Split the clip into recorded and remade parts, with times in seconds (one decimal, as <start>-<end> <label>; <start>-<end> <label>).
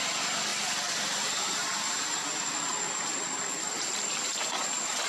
0.0-5.1 recorded